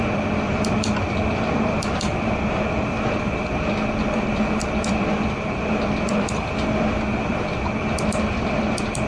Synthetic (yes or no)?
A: yes